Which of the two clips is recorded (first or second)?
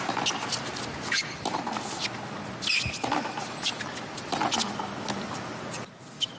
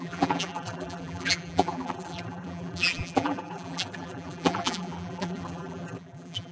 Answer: first